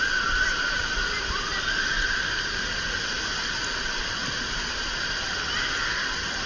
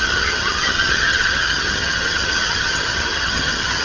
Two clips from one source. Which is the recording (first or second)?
first